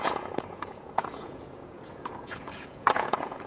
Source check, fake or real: fake